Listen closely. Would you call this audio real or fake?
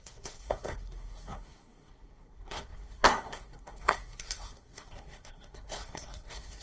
fake